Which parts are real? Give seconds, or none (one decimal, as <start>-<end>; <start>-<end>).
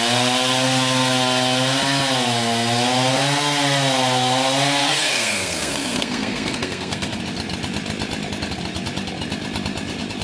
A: 0.0-4.8; 7.2-10.2